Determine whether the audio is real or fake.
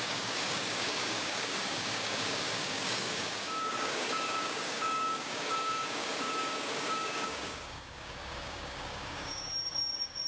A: fake